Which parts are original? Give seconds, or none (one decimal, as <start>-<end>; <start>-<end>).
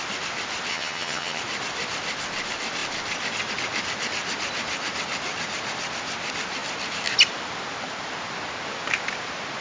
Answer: 0.0-0.7; 1.4-9.6